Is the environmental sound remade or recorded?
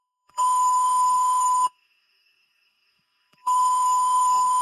remade